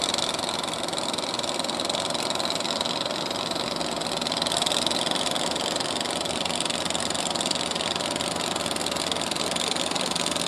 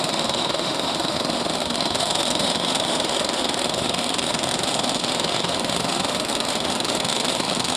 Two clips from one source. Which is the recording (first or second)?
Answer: first